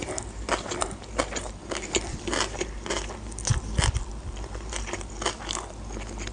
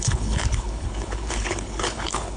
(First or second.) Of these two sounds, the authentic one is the first